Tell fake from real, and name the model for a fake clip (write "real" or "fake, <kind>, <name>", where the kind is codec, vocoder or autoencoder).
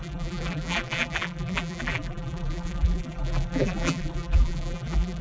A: fake, vocoder, BigVGAN v2